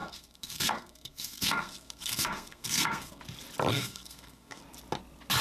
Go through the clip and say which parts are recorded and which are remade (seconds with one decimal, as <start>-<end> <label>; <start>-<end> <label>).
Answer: 0.0-3.2 remade; 3.2-3.7 recorded; 3.7-4.6 remade; 4.6-5.4 recorded